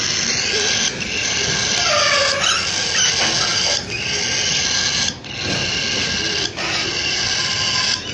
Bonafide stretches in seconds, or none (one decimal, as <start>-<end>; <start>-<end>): 0.0-8.1